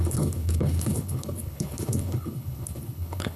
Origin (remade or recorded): remade